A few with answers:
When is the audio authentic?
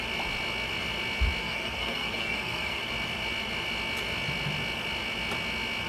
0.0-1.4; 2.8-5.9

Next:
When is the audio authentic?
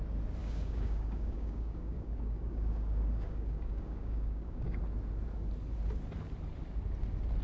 0.0-0.4; 4.8-7.4